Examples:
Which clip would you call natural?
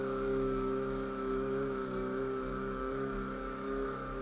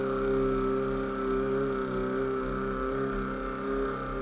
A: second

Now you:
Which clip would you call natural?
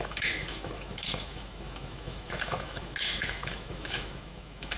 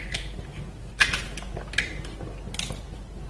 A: second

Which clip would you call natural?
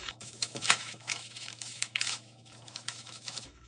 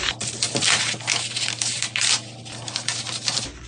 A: second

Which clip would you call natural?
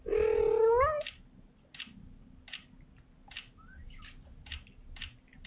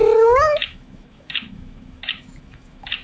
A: first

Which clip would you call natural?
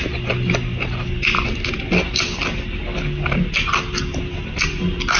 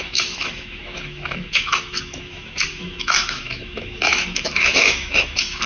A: first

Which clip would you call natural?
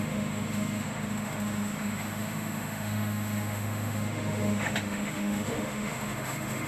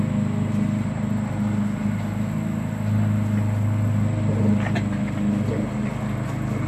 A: second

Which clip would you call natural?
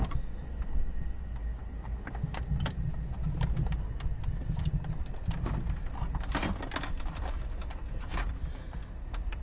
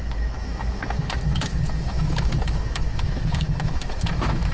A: first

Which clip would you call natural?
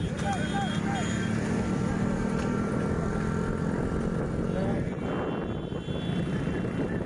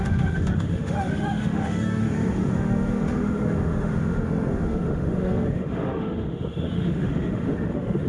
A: first